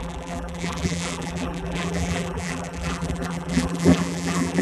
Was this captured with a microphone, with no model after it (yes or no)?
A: no